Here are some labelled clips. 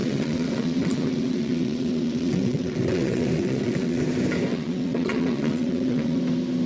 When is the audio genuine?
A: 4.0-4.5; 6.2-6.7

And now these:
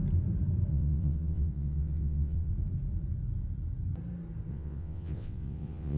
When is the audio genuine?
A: 0.0-0.7; 2.5-4.5

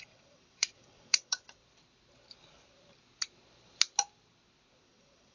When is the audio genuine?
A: 1.6-4.8

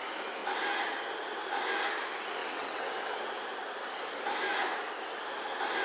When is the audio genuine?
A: 0.0-2.4; 3.3-5.8

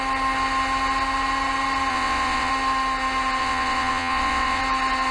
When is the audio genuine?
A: 0.0-1.9; 2.5-3.4; 4.6-5.1

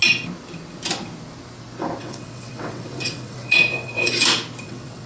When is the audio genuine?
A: 0.0-2.0; 4.1-4.6

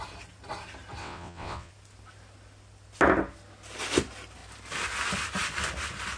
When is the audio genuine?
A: 0.0-1.0; 1.7-6.2

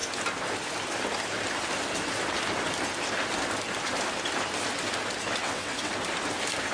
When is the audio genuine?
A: 0.0-5.4; 5.9-6.7